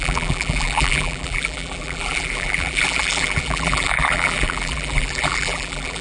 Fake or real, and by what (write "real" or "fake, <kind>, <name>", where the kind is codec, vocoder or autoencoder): fake, vocoder, BigVGAN v2